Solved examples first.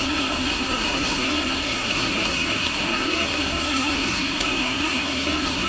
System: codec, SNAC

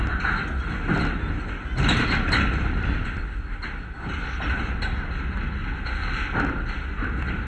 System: none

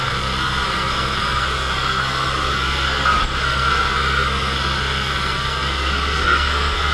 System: codec, SNAC